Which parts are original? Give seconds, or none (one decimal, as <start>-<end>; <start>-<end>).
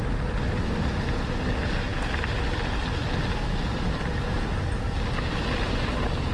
0.0-3.7; 4.6-6.3